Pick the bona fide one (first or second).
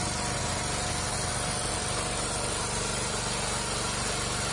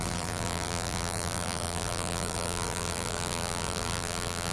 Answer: first